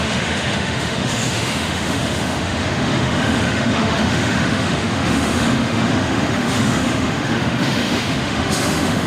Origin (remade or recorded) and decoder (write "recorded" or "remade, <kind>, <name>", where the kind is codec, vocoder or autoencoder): remade, autoencoder, DAC-VAE